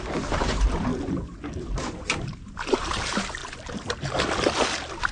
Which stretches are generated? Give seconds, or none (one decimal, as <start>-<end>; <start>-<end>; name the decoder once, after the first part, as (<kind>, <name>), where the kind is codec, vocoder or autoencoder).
0.0-0.9 (vocoder, BigVGAN v2); 1.8-3.4